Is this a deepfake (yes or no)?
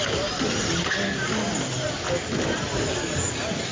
no